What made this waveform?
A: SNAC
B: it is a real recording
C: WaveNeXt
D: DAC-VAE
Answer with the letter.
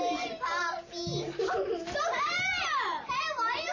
B